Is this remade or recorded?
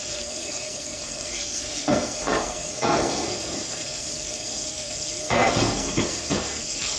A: remade